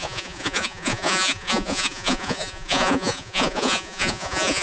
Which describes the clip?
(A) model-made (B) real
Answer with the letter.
A